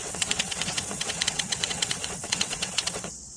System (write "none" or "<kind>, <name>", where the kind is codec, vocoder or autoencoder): vocoder, WaveNeXt